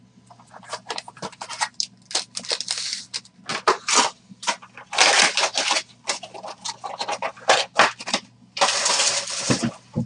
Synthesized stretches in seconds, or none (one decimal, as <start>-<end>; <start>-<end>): none